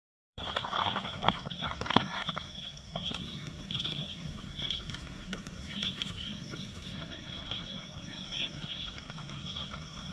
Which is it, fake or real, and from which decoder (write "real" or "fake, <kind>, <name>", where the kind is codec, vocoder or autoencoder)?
fake, codec, SNAC